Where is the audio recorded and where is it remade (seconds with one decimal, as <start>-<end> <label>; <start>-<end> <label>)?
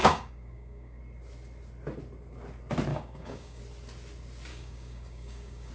0.0-1.0 remade; 1.0-2.9 recorded; 2.9-3.6 remade; 3.6-4.5 recorded; 4.5-5.7 remade